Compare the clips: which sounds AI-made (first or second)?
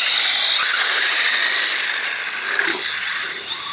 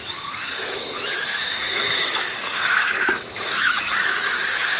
second